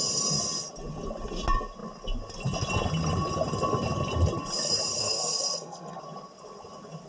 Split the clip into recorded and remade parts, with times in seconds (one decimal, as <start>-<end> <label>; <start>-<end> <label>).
0.0-5.0 recorded; 5.0-6.0 remade; 6.0-7.1 recorded